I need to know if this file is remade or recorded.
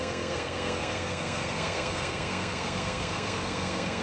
remade